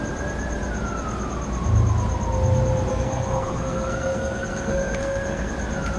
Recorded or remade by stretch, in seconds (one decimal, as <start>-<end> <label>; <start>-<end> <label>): 0.0-2.9 recorded; 2.9-5.5 remade; 5.5-6.0 recorded